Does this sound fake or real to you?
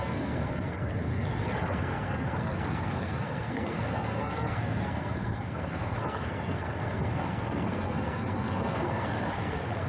fake